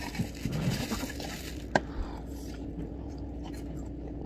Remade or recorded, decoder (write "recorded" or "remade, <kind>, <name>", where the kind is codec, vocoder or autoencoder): recorded